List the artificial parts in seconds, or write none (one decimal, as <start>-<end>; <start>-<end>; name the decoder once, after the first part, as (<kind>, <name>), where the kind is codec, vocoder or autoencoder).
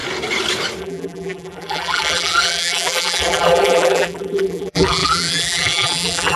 0.8-6.4 (vocoder, BigVGAN v2)